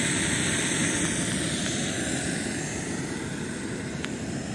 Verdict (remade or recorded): recorded